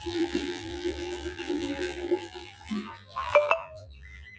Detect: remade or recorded remade